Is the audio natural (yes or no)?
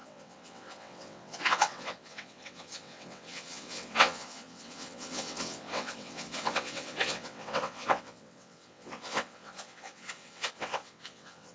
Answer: no